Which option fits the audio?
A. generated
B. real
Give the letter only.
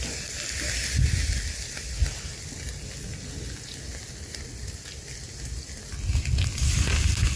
B